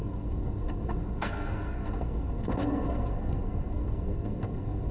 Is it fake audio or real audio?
fake